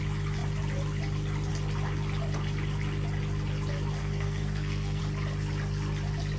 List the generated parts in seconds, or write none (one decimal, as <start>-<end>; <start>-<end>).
4.0-5.0